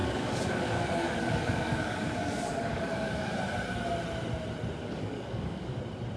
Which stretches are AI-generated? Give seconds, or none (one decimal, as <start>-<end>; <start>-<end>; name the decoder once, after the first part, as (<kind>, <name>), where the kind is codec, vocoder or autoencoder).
0.0-3.4 (codec, DAC); 4.8-5.8